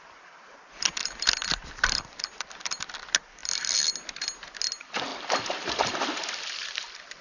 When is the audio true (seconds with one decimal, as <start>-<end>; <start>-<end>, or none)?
0.0-1.0; 2.8-5.1; 6.0-7.2